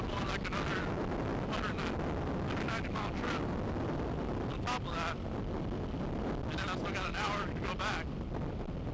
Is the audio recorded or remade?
recorded